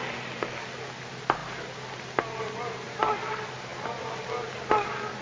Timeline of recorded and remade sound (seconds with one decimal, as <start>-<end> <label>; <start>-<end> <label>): 0.0-5.2 recorded